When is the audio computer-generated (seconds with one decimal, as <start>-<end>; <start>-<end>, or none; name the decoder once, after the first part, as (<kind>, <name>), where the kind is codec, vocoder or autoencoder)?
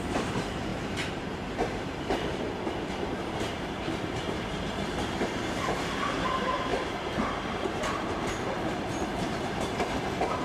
0.0-10.4 (vocoder, BigVGAN v2)